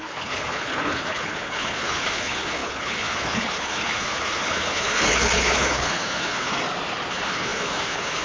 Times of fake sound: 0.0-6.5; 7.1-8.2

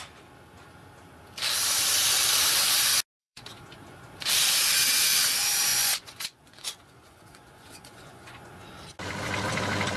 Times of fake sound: 3.2-4.0; 5.7-8.5

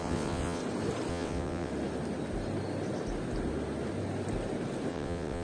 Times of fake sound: 0.0-0.6; 1.1-1.7; 4.9-5.4

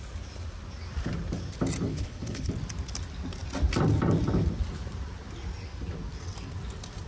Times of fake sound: 1.9-2.5

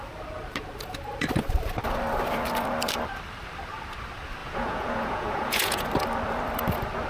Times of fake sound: 4.4-5.9

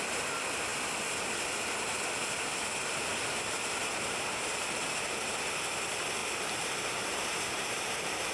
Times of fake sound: 2.5-5.5; 6.2-8.3